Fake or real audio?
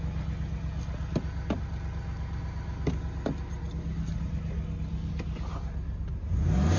real